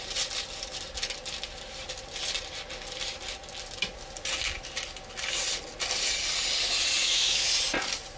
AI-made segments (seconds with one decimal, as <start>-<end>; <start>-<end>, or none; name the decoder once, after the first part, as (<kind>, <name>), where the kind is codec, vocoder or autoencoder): 7.0-7.5 (autoencoder, DAC-VAE)

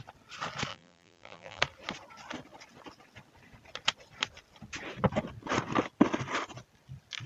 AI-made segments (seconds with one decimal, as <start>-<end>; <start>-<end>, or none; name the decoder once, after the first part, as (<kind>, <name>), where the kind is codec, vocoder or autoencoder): 0.7-1.6 (vocoder, BigVGAN v2)

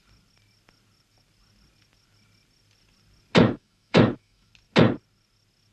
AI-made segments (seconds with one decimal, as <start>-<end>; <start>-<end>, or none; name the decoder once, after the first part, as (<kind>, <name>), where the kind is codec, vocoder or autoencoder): 3.4-4.5 (autoencoder, DAC-VAE)

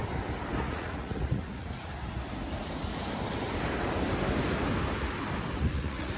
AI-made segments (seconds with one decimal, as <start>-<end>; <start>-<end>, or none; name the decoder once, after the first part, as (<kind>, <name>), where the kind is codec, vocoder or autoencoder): 0.6-1.9 (vocoder, Vocos); 5.6-6.2

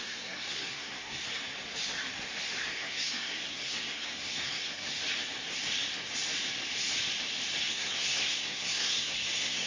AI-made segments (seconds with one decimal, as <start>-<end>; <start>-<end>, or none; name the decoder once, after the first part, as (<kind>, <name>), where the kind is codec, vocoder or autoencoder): 0.0-1.2 (codec, SNAC); 2.7-4.9; 7.7-9.7

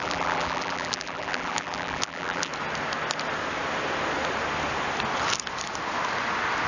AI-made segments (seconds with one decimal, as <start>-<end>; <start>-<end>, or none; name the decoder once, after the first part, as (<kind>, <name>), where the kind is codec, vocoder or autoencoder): 0.0-2.5 (vocoder, BigVGAN v2)